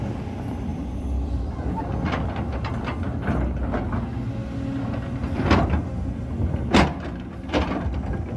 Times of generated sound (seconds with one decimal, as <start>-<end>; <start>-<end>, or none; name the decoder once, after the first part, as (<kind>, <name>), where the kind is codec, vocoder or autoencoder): 0.7-1.5 (vocoder, BigVGAN v2)